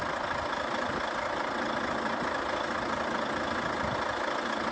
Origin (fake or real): real